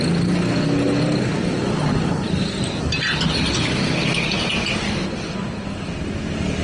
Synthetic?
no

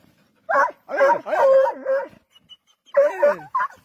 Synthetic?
no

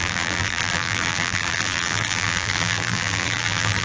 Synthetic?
yes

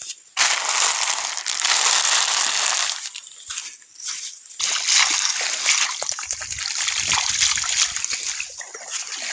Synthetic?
no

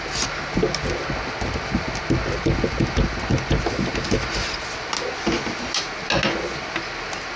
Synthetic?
no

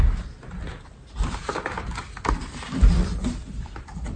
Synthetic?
no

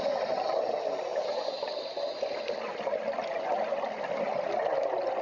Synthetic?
no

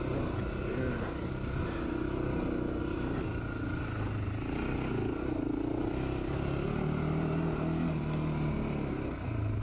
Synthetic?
no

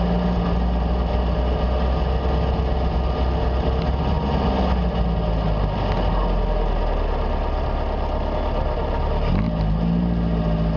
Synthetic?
no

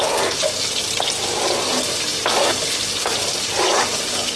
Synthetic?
no